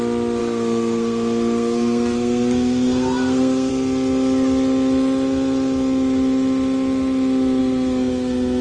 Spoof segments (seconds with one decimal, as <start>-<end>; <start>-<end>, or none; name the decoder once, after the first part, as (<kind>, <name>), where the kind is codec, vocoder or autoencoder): 0.4-3.7 (codec, SNAC); 7.6-8.6